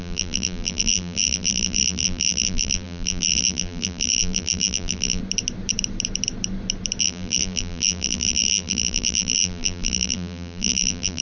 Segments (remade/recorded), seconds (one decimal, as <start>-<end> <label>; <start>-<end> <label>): 0.0-5.2 remade; 5.2-7.0 recorded; 7.0-11.2 remade